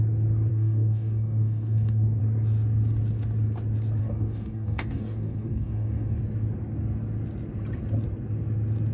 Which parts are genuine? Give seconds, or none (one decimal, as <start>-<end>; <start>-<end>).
0.0-0.5; 2.2-4.0; 6.2-8.9